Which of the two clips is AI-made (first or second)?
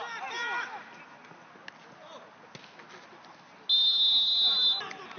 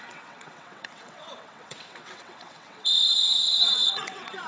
second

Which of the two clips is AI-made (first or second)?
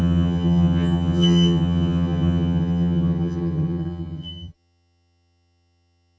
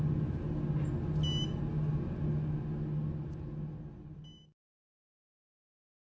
first